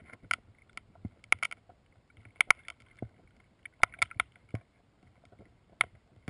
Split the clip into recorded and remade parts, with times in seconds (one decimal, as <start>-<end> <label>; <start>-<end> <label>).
0.0-6.3 recorded